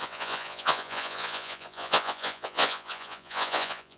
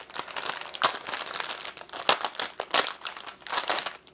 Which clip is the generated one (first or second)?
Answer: first